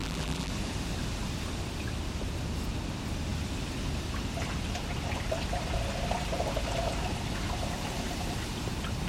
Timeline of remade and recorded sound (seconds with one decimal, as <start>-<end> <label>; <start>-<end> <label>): 0.0-0.5 remade; 0.5-9.1 recorded